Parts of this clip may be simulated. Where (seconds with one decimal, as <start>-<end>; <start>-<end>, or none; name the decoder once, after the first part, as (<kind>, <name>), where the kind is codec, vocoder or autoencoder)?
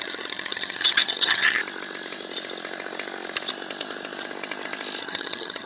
0.0-1.6 (vocoder, HiFi-GAN); 5.0-5.7